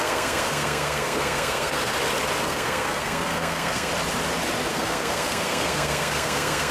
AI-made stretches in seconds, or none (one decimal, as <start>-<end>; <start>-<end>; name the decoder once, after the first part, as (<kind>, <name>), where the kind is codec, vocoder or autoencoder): 0.0-1.9 (codec, SNAC); 2.4-3.9; 4.7-6.7

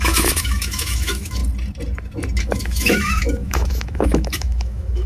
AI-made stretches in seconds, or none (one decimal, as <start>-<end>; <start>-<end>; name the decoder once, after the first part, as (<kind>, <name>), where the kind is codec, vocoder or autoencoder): 0.0-1.4 (autoencoder, DAC-VAE); 2.4-5.1